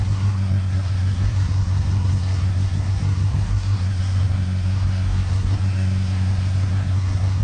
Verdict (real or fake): fake